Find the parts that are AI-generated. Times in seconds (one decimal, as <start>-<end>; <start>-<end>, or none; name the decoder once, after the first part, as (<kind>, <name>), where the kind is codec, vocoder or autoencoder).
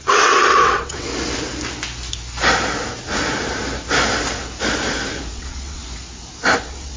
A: 0.0-1.1 (vocoder, WaveNeXt); 5.3-5.8; 6.6-7.0